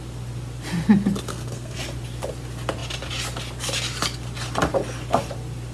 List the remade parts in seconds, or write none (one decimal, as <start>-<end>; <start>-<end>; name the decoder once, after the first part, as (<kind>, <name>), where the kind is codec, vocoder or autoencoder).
1.3-1.8 (codec, SNAC)